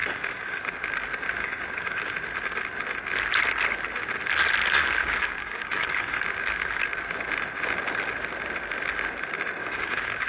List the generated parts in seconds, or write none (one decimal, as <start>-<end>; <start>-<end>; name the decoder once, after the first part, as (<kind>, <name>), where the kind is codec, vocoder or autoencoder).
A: 0.0-0.6 (codec, DAC); 1.4-2.1; 5.0-6.2; 9.6-10.3